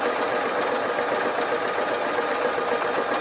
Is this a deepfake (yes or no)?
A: no